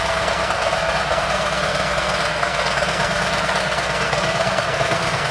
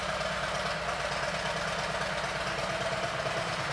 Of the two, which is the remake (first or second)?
first